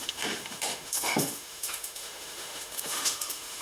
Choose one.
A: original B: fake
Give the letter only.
B